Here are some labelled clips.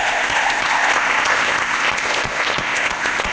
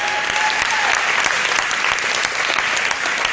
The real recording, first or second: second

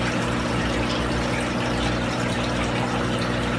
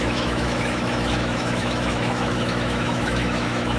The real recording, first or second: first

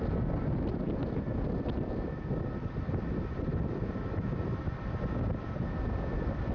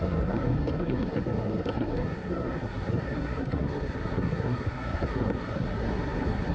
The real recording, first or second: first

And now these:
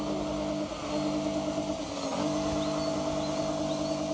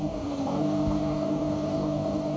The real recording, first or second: first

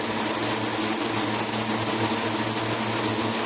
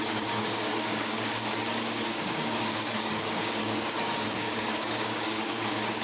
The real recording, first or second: first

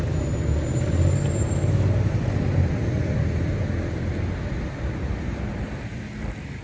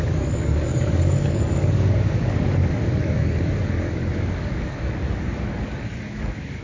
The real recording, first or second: first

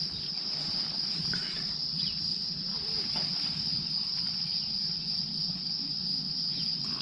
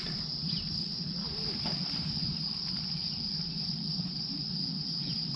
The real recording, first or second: first